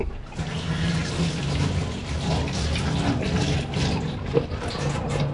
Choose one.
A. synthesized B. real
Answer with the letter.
B